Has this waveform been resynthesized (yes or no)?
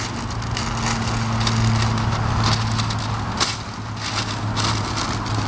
no